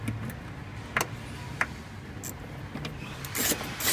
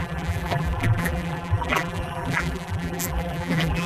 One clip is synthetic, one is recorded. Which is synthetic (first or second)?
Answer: second